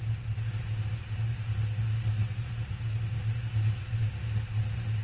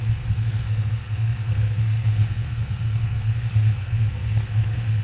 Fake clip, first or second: second